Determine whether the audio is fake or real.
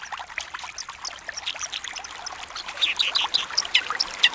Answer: real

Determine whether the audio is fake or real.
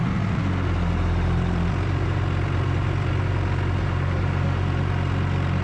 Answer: real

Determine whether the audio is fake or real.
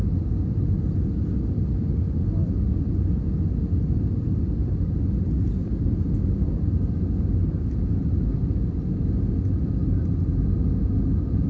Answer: real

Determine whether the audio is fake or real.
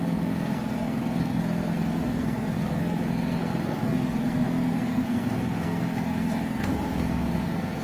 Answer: fake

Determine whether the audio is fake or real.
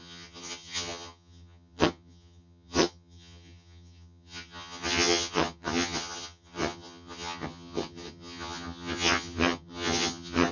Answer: fake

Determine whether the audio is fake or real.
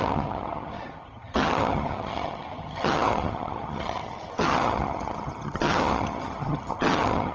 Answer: fake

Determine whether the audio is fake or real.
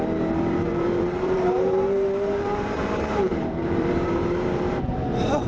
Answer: fake